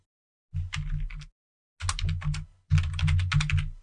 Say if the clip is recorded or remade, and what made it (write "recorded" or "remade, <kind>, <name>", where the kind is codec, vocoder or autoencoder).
recorded